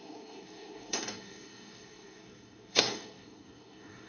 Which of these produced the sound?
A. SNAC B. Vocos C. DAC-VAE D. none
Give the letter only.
A